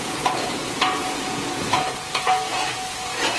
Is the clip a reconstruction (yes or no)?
yes